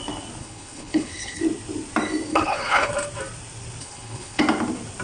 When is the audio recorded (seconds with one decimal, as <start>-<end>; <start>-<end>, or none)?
0.0-0.4; 1.4-2.3; 2.9-3.8; 4.4-5.0